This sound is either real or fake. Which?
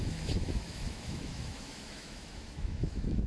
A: fake